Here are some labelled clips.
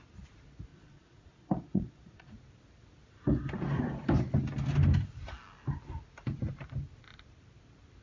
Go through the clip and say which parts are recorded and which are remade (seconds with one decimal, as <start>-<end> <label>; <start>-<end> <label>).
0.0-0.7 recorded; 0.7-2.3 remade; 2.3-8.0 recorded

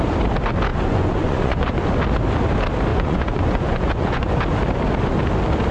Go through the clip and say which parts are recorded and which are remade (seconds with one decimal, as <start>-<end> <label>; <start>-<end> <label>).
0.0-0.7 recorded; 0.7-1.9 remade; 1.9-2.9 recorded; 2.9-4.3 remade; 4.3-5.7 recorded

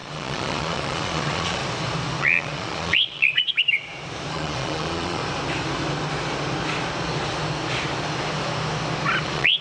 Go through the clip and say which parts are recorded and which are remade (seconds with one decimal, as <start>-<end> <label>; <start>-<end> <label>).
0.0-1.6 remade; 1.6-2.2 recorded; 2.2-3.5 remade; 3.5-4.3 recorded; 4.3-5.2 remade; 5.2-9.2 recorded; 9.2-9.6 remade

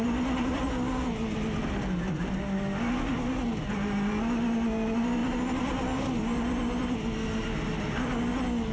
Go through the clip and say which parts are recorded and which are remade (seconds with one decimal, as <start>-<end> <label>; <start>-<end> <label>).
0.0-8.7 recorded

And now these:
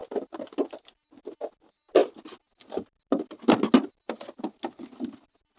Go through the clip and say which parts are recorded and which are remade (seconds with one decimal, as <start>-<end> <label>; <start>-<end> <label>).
0.0-5.6 recorded